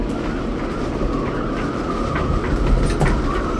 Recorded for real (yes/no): yes